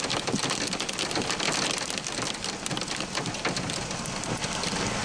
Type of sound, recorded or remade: recorded